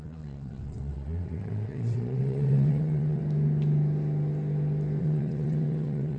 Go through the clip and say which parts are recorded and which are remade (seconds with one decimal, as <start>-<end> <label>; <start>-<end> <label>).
0.0-3.2 remade; 3.2-5.0 recorded; 5.0-6.2 remade

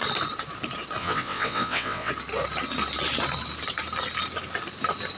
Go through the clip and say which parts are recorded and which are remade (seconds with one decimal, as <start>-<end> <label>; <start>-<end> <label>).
0.0-1.0 recorded; 1.0-2.1 remade; 2.1-5.2 recorded

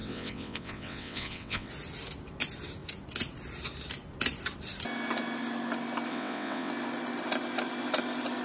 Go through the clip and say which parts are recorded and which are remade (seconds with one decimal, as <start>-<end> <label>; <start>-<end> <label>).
0.0-1.7 remade; 1.7-6.1 recorded; 6.1-6.7 remade; 6.7-8.4 recorded